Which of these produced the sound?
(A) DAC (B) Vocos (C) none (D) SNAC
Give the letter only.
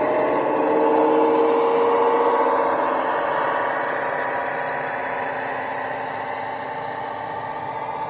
C